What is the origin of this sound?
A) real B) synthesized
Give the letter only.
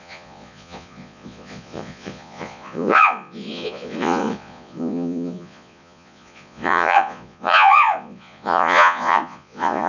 B